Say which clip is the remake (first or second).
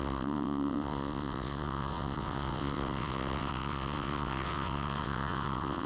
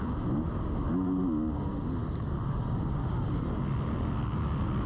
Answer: first